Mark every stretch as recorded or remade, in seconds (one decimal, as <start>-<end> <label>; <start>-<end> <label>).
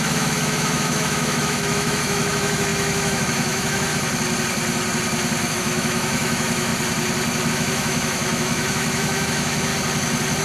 0.0-3.9 remade; 3.9-5.5 recorded; 5.5-6.7 remade; 6.7-7.5 recorded; 7.5-9.7 remade; 9.7-10.4 recorded